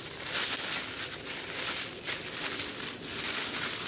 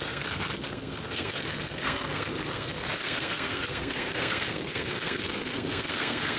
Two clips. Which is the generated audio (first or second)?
second